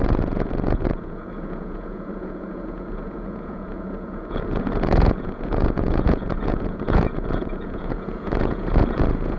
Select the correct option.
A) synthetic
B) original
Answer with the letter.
A